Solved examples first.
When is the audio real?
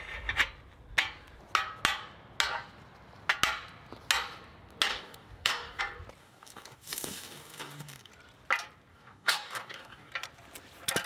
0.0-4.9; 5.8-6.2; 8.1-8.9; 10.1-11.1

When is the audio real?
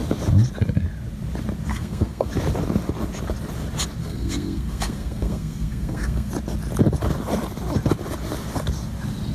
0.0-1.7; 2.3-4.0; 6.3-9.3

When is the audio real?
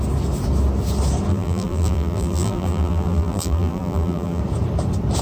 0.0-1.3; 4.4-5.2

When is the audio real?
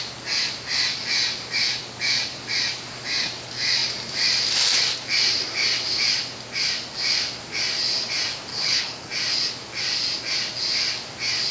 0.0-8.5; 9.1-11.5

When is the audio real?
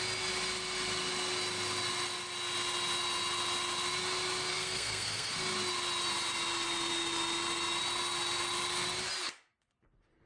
0.0-4.5; 5.3-10.3